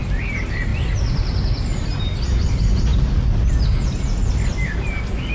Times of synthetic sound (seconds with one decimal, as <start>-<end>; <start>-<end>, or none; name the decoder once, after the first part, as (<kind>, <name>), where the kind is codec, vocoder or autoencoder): none